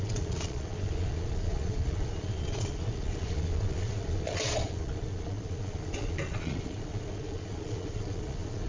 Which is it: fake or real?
fake